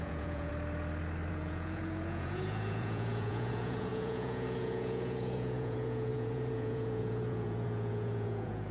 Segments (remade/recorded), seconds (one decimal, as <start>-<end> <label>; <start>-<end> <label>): 0.0-0.5 remade; 0.5-1.3 recorded; 1.3-8.7 remade